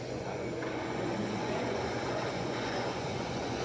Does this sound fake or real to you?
fake